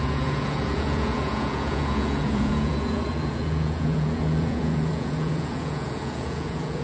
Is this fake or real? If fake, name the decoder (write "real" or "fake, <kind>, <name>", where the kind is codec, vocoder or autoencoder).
fake, vocoder, Vocos